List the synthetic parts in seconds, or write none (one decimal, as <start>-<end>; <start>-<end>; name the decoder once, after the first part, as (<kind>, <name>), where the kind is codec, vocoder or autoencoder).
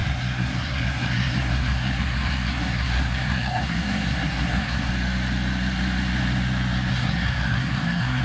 0.0-4.9 (codec, SNAC); 6.9-8.2